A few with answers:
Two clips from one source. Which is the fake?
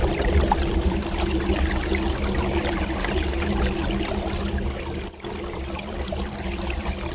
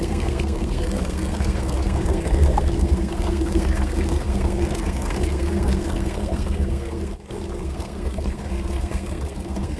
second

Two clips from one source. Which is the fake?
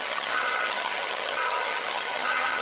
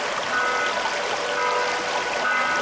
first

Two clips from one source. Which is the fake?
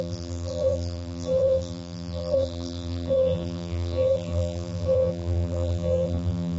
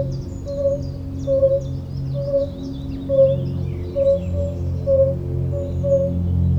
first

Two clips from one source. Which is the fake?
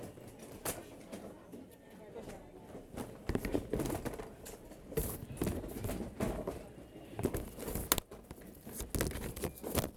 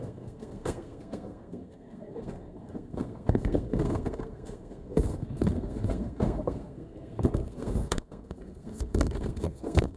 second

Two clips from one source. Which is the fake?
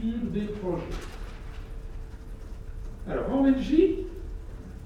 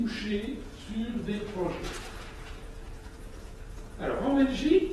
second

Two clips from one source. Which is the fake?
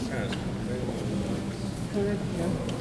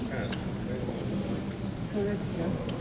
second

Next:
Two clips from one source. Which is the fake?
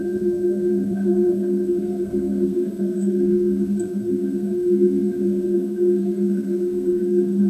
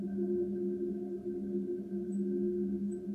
first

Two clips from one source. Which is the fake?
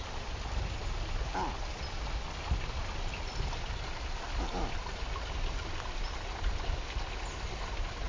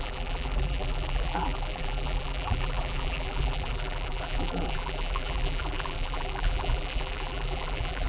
second